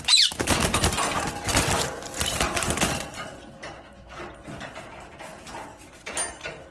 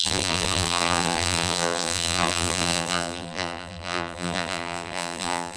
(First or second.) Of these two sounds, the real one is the first